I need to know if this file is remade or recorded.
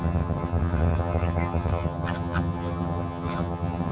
remade